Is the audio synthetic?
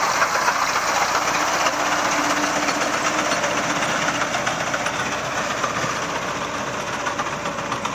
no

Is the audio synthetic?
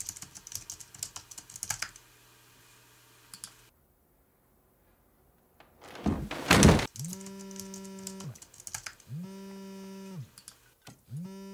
no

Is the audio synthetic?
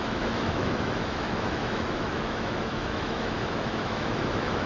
yes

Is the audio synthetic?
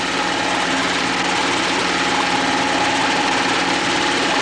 no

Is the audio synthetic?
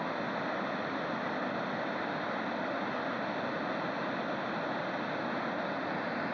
no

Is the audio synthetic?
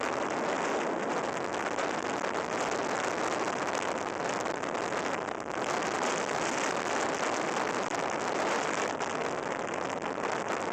no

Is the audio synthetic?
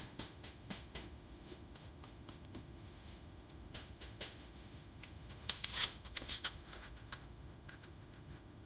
yes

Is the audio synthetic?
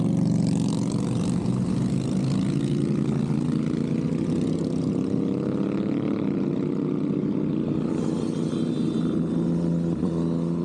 no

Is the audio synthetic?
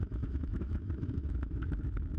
yes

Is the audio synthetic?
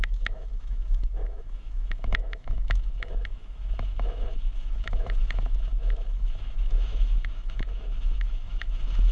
yes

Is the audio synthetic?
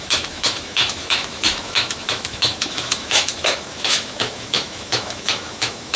yes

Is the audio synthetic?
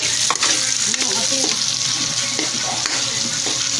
no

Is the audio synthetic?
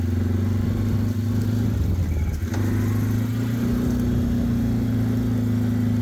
no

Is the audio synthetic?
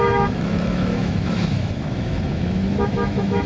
yes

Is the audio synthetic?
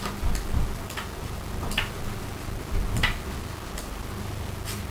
no